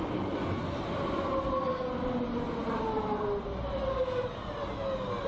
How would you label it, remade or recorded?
recorded